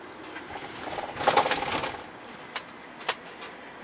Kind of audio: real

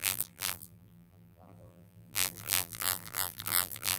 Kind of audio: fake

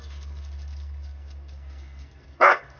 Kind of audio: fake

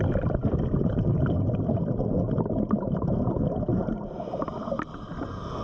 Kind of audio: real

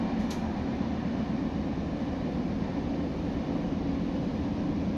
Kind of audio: real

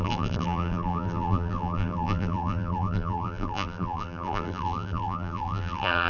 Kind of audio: fake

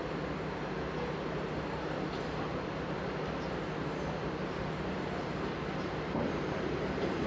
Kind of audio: real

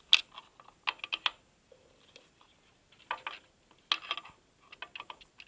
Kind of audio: real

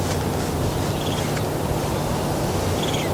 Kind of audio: real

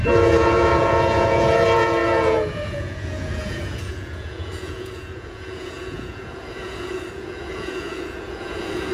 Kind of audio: fake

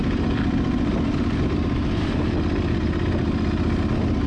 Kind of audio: real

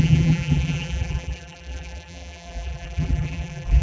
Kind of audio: fake